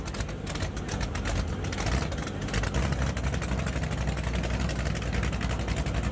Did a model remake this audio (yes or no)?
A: no